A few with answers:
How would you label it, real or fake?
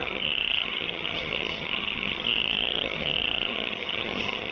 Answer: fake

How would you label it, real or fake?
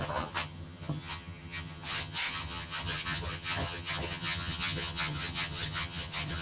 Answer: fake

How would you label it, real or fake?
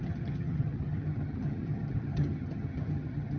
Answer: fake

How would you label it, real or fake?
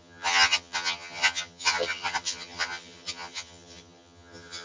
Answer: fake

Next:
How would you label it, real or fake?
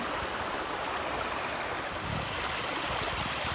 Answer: real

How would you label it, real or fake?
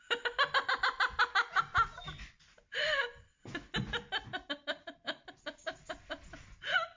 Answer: real